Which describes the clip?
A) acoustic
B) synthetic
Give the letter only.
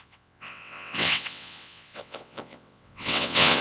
B